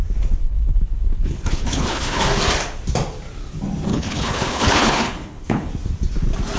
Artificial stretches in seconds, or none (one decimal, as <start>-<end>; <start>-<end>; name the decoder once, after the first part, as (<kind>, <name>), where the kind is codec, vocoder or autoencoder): 0.4-2.2 (codec, HILCodec); 3.9-5.7